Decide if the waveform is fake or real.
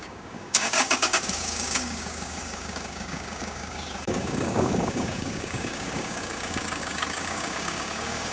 fake